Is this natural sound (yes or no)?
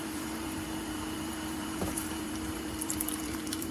no